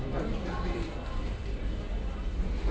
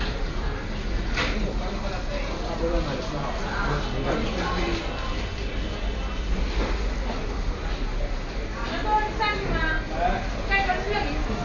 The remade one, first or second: first